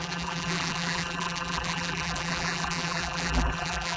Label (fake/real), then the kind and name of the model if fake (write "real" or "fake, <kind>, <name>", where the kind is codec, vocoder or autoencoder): fake, vocoder, BigVGAN v2